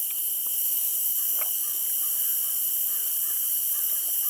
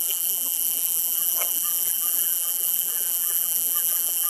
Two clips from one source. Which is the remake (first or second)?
second